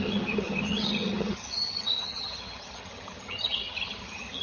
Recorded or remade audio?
remade